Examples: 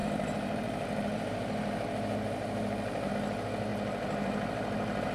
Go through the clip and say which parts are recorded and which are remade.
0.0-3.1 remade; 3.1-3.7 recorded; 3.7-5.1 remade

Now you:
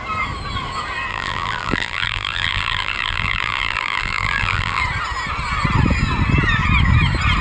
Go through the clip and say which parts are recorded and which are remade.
0.0-1.1 recorded; 1.1-4.8 remade; 4.8-7.4 recorded

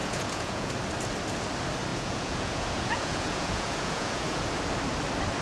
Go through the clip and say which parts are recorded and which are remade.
0.0-0.7 remade; 0.7-1.9 recorded; 1.9-4.5 remade; 4.5-5.4 recorded

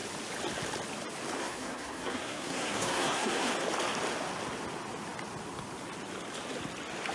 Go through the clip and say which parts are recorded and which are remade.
0.0-1.4 recorded; 1.4-3.5 remade; 3.5-7.1 recorded

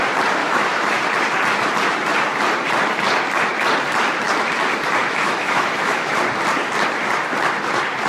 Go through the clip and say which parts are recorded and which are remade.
0.0-0.4 recorded; 0.4-1.0 remade; 1.0-5.0 recorded; 5.0-6.1 remade; 6.1-8.1 recorded

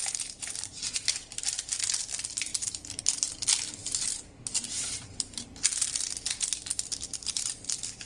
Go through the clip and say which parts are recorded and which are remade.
0.0-0.8 remade; 0.8-2.5 recorded; 2.5-3.3 remade; 3.3-3.8 recorded; 3.8-5.6 remade; 5.6-8.1 recorded

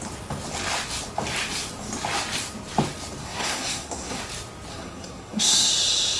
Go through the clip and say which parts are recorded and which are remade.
0.0-3.2 recorded; 3.2-4.2 remade; 4.2-4.7 recorded; 4.7-5.7 remade; 5.7-6.2 recorded